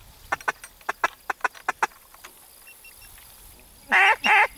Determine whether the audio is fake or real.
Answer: real